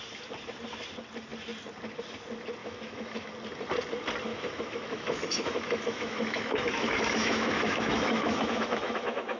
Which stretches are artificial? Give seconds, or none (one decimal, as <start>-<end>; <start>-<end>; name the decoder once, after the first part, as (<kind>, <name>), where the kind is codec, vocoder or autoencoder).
2.6-3.3 (autoencoder, DAC-VAE); 4.3-9.4